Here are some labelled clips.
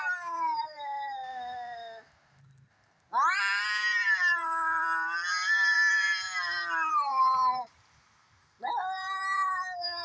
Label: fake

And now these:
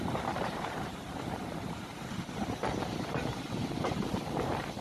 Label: fake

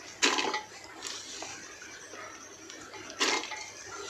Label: real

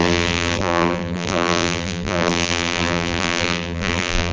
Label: fake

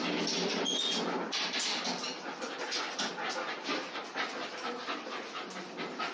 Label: real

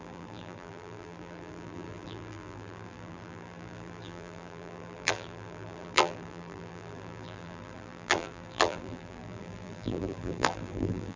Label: fake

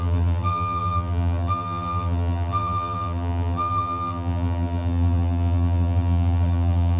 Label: fake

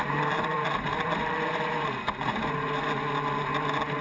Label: fake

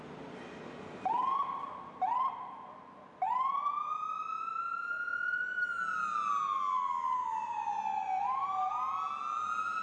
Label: real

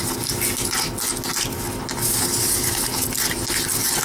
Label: real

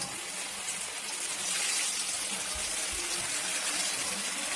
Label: real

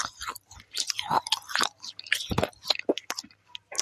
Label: real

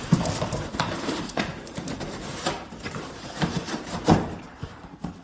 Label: fake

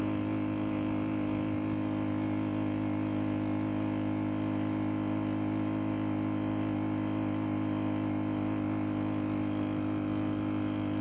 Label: real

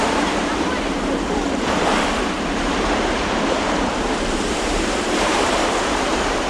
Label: fake